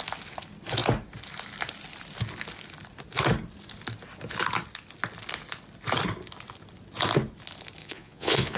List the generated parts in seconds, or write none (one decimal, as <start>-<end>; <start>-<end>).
7.8-8.6